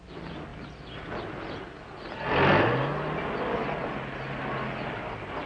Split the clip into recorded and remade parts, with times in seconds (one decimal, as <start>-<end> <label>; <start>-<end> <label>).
0.0-5.5 recorded